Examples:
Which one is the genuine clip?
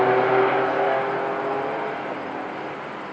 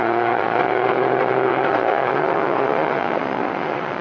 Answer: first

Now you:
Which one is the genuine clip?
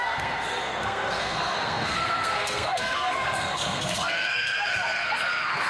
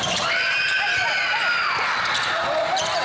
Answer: second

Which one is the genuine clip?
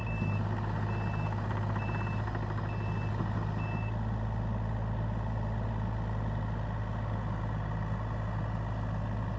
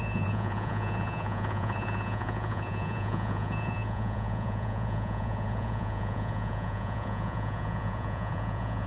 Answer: first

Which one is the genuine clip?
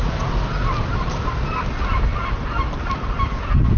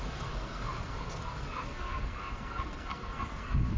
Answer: first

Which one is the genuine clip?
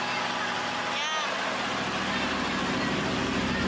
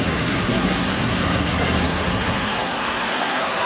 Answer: first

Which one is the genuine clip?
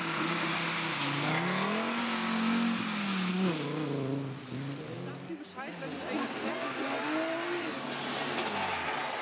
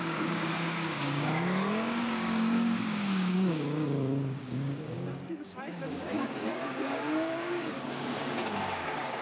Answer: first